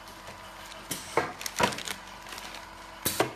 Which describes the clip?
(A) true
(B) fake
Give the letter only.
A